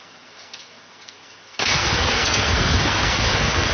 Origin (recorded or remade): remade